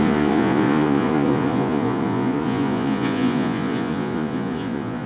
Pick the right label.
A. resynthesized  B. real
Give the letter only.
A